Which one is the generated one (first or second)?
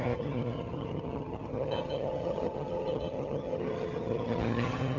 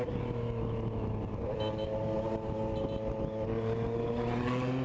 first